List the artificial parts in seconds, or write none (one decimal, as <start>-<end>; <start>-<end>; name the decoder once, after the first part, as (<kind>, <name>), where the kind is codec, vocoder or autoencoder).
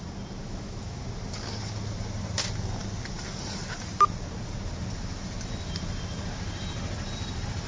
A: 0.4-1.0 (autoencoder, DAC-VAE)